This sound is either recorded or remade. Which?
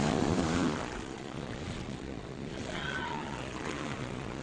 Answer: remade